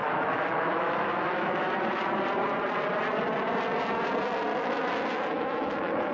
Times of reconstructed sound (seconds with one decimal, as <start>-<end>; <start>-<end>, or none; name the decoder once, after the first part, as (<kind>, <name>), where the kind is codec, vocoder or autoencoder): 0.0-1.7 (autoencoder, DAC-VAE); 4.5-6.1